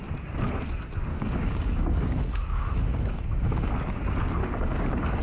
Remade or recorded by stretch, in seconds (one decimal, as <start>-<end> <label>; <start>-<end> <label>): 0.0-1.1 recorded; 1.1-3.7 remade; 3.7-4.4 recorded; 4.4-5.2 remade